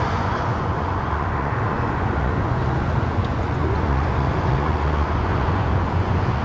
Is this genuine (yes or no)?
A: no